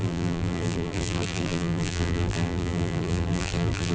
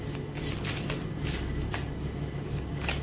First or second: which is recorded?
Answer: second